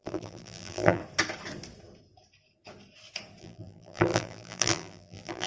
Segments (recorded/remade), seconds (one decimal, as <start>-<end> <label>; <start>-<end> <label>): 0.0-1.0 remade; 1.0-3.4 recorded; 3.4-5.5 remade